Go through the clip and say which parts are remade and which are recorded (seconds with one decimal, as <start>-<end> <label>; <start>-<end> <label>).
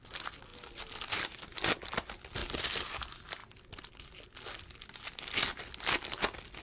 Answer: 0.0-6.6 recorded